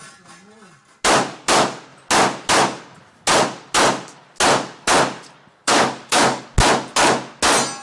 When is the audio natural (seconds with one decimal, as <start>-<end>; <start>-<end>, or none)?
0.0-5.5; 6.4-7.8